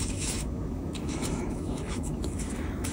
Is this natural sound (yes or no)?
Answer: no